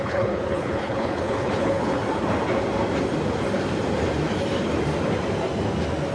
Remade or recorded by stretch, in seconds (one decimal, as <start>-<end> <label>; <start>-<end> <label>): 0.0-2.0 remade; 2.0-6.1 recorded